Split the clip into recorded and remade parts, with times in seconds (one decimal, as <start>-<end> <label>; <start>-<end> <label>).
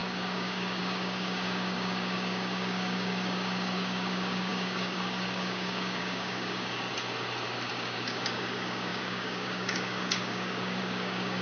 0.0-6.9 remade; 6.9-7.7 recorded; 7.7-11.4 remade